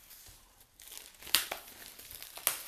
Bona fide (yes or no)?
yes